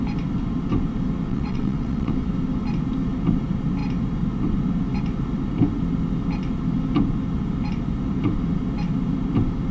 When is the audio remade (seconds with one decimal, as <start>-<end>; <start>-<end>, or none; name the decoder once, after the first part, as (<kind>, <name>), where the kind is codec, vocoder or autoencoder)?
1.3-2.1 (vocoder, WaveNeXt)